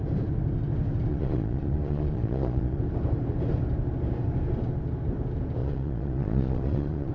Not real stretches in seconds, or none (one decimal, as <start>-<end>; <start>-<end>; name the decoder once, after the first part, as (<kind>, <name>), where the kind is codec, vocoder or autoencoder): 1.1-2.8 (vocoder, Vocos); 5.6-7.1